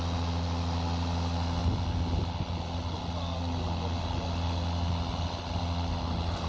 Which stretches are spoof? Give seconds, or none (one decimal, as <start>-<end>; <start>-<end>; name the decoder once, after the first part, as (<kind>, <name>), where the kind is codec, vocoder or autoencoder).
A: none